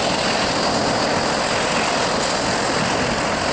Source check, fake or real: real